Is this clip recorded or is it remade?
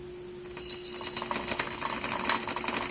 recorded